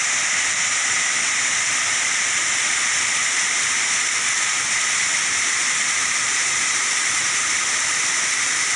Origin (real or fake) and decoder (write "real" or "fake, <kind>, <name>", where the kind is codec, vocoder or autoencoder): real